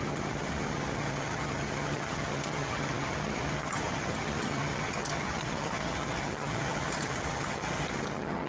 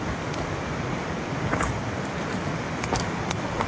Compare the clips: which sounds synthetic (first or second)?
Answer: first